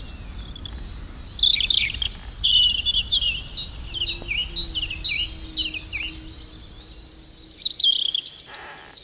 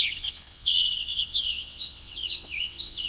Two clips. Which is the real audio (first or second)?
first